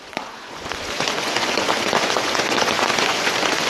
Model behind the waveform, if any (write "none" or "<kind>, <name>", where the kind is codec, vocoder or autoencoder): vocoder, Vocos